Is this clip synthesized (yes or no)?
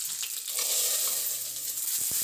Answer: no